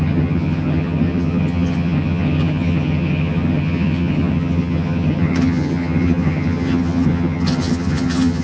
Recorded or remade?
remade